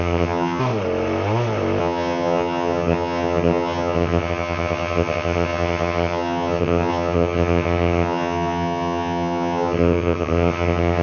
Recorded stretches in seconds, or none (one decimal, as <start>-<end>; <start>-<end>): 0.6-1.8